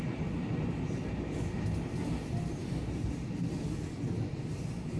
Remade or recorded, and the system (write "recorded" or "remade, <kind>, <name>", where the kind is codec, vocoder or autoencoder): recorded